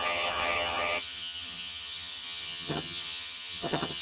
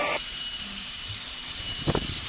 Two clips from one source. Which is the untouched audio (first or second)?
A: second